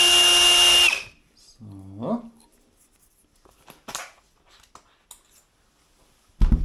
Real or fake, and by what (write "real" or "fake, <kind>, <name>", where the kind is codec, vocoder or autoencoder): real